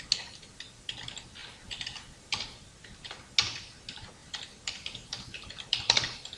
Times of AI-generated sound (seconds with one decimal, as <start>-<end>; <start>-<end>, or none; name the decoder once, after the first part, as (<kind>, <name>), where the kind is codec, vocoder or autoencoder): 1.4-3.1 (vocoder, BigVGAN v2); 4.2-6.4